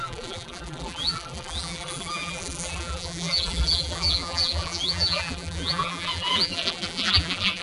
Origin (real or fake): fake